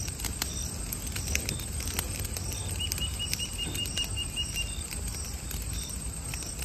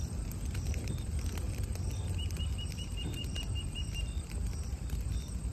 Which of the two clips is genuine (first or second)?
first